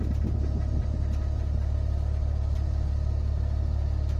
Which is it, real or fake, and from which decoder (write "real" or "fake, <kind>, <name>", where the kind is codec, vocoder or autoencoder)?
real